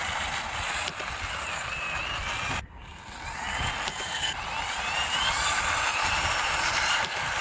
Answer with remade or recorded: recorded